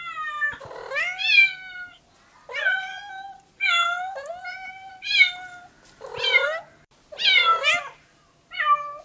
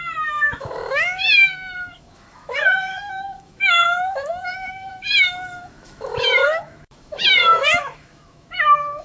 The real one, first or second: first